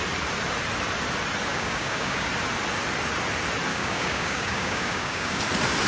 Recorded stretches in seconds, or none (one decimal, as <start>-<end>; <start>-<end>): 0.0-1.5; 2.3-3.7; 5.4-5.9